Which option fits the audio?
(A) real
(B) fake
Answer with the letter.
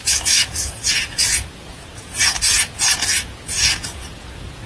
B